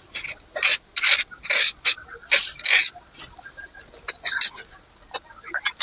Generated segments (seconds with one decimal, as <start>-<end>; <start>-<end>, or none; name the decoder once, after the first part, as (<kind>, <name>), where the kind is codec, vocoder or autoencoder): none